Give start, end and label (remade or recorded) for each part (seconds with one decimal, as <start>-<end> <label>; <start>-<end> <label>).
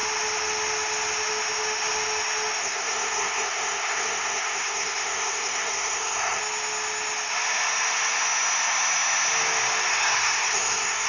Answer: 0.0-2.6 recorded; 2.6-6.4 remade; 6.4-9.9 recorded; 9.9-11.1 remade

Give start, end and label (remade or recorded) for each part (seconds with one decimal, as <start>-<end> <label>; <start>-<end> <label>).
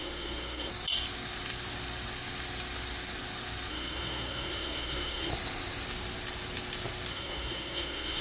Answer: 0.0-0.7 remade; 0.7-3.7 recorded; 3.7-5.3 remade; 5.3-7.1 recorded; 7.1-8.2 remade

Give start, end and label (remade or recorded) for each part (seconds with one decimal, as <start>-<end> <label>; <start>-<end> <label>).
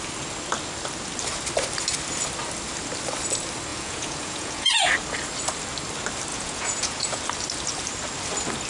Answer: 0.0-3.7 recorded; 3.7-4.9 remade; 4.9-6.3 recorded; 6.3-7.2 remade; 7.2-8.7 recorded